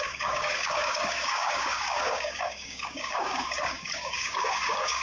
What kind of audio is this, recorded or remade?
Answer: remade